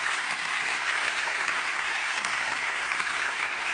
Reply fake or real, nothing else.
fake